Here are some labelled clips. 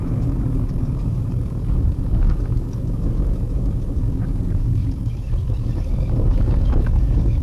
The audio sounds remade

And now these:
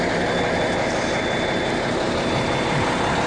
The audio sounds recorded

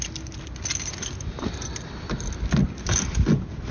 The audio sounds recorded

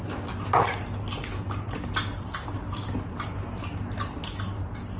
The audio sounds recorded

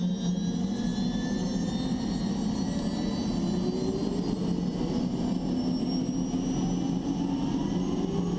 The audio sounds recorded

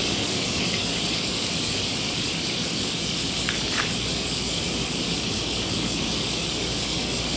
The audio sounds remade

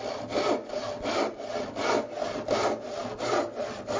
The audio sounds recorded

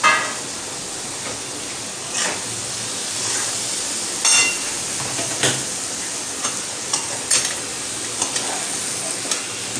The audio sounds recorded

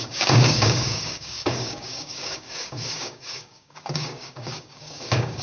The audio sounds remade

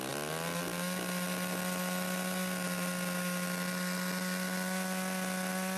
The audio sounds recorded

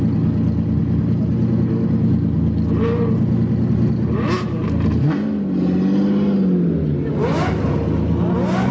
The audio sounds recorded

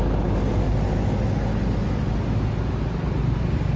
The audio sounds recorded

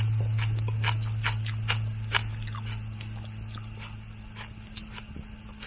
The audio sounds recorded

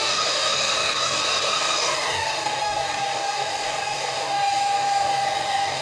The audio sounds remade